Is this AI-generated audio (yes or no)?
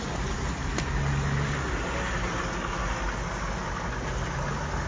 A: no